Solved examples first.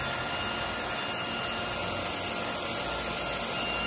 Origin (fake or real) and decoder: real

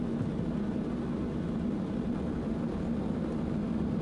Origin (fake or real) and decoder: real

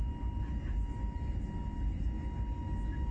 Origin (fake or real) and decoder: real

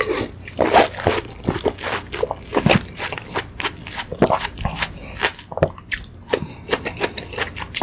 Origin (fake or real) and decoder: real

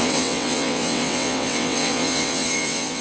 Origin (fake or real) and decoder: fake, vocoder, WaveNeXt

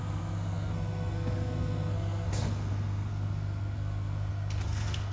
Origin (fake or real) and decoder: fake, codec, SNAC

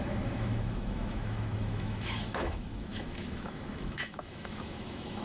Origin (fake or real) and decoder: fake, autoencoder, DAC-VAE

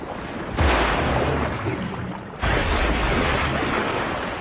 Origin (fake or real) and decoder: real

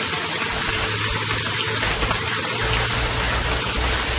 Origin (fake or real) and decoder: real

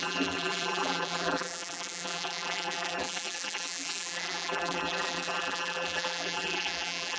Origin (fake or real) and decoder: fake, vocoder, BigVGAN v2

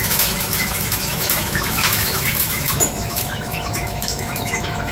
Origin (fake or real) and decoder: fake, autoencoder, DAC-VAE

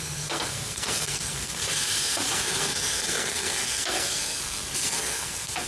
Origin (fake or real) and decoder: fake, codec, SNAC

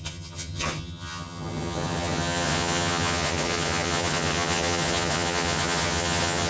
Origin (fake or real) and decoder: fake, vocoder, HiFi-GAN